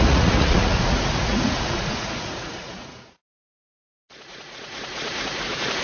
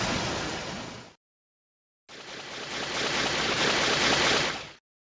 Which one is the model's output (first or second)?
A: first